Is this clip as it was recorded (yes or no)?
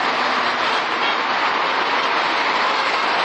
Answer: no